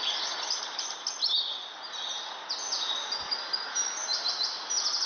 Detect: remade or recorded recorded